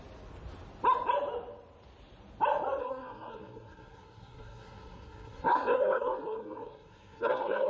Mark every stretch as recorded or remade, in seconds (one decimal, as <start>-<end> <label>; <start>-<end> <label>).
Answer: 0.0-2.8 recorded; 2.8-7.7 remade